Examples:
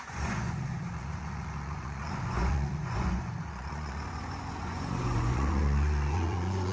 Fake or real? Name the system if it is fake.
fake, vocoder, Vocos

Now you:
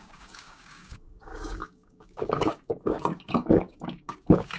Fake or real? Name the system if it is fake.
fake, codec, DAC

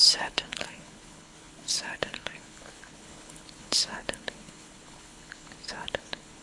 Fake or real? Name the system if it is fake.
fake, codec, HILCodec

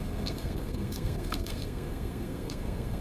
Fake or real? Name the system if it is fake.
fake, codec, SNAC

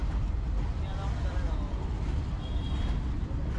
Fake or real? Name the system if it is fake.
real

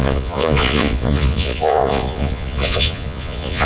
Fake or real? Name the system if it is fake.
fake, vocoder, Vocos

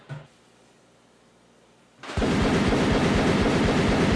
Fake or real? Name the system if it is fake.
real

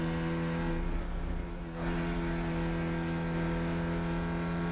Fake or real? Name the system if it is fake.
real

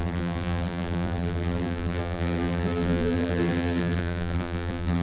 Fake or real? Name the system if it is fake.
fake, vocoder, BigVGAN v2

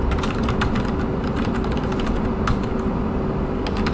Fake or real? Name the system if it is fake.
real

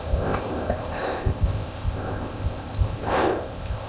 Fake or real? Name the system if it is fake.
fake, codec, ZipCodec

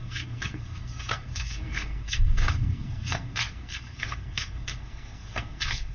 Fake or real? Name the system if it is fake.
fake, codec, SNAC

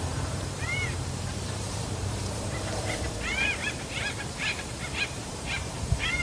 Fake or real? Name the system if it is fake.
fake, vocoder, BigVGAN v2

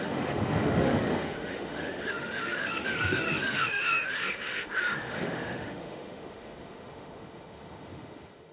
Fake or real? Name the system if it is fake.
fake, autoencoder, DAC-VAE